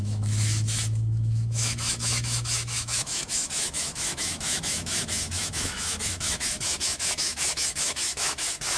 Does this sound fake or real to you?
fake